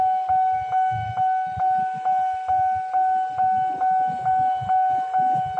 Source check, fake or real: real